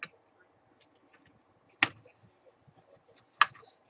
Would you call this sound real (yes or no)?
yes